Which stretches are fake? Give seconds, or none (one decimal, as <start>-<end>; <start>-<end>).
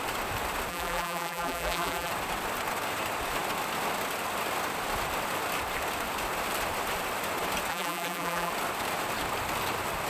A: 0.7-2.1; 7.7-8.5